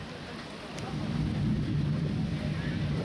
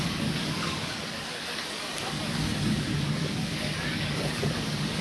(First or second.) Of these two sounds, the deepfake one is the second